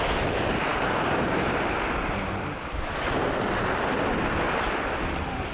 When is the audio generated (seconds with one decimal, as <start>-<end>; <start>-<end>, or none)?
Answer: none